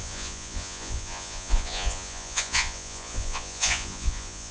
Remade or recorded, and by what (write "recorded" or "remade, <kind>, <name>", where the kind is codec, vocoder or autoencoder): remade, vocoder, Vocos